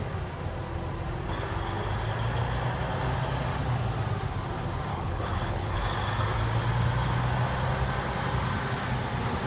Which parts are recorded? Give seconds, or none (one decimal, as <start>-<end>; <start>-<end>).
0.0-4.9; 5.8-9.5